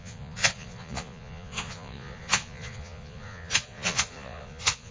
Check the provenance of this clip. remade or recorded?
remade